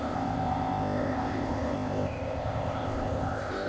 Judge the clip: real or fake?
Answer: fake